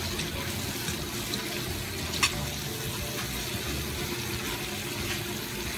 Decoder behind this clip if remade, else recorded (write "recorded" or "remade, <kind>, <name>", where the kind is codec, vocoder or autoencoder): recorded